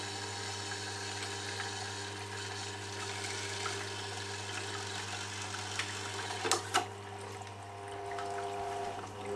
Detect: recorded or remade recorded